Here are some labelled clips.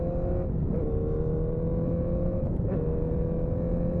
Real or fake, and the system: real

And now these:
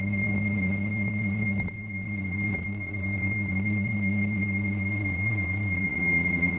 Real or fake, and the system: fake, vocoder, Vocos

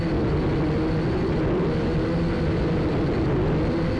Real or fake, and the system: real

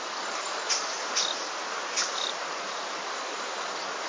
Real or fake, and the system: real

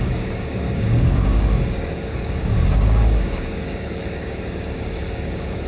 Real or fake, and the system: fake, codec, DAC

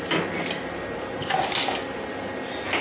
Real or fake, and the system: real